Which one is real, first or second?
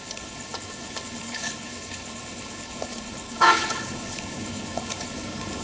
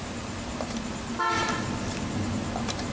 second